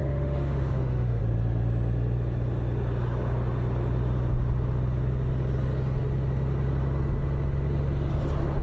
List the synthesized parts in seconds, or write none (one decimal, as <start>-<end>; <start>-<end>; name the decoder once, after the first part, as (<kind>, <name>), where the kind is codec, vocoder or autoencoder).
0.0-1.2 (autoencoder, DAC-VAE)